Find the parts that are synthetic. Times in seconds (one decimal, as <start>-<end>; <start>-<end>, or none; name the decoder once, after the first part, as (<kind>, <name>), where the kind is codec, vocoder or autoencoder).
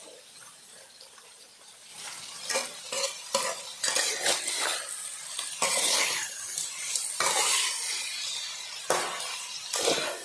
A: none